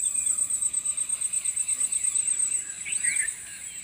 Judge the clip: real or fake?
real